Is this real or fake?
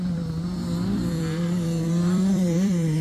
fake